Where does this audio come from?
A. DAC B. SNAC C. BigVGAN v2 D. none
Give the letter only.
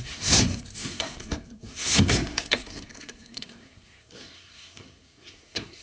B